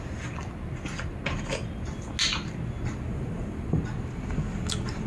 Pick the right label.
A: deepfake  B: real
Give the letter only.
B